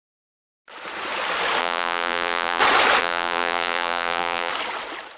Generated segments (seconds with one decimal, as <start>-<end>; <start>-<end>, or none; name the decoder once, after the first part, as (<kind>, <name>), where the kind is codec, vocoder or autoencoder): 1.6-2.6 (vocoder, BigVGAN v2); 3.0-4.5